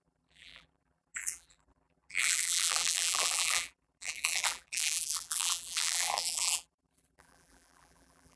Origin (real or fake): fake